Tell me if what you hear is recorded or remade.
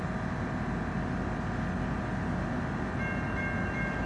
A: recorded